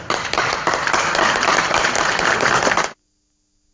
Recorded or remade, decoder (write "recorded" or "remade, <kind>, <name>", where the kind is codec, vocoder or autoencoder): recorded